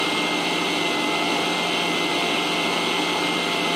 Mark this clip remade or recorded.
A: recorded